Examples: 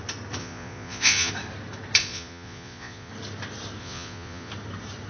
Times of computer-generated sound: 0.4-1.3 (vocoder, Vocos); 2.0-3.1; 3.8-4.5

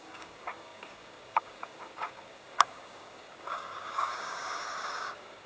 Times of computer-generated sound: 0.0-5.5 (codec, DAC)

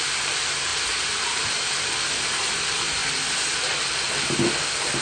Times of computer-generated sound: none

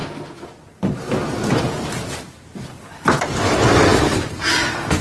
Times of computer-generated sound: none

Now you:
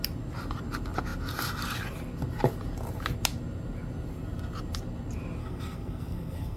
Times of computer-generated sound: 5.4-6.6 (codec, SNAC)

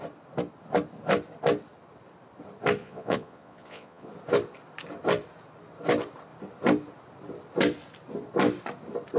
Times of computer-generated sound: 2.8-4.1 (vocoder, Vocos)

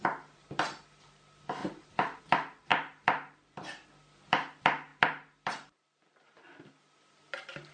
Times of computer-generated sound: 1.6-2.2 (vocoder, BigVGAN v2); 2.7-3.7; 4.9-6.7

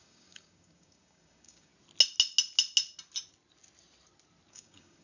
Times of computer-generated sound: 0.0-1.7 (codec, DAC); 4.5-5.0